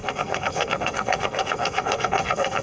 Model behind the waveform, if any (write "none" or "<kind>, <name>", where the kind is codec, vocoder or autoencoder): codec, SNAC